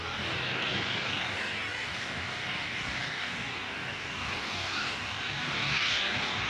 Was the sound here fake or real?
fake